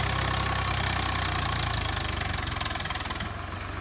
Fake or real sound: real